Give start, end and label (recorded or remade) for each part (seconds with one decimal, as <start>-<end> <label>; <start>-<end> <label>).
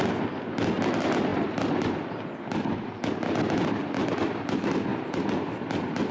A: 0.0-6.1 recorded